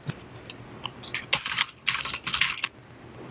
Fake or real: real